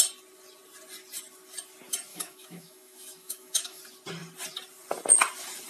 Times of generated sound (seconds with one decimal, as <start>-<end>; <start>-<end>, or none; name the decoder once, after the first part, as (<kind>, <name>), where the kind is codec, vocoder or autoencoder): 2.1-3.8 (autoencoder, DAC-VAE)